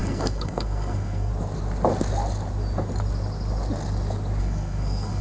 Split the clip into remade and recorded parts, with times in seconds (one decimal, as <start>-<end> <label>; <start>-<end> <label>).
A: 0.0-1.3 remade; 1.3-4.4 recorded; 4.4-5.2 remade